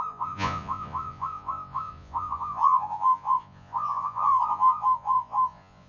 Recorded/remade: remade